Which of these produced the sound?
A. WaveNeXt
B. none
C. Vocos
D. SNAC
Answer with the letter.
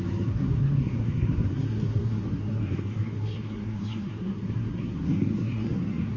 D